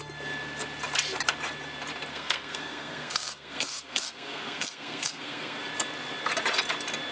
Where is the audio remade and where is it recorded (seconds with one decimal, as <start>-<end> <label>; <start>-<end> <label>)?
0.0-2.1 recorded; 2.1-5.6 remade; 5.6-7.1 recorded